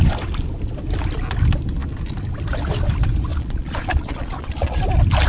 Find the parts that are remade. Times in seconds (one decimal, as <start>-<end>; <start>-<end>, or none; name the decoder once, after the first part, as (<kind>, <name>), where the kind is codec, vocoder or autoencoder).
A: 3.3-4.8 (vocoder, Vocos)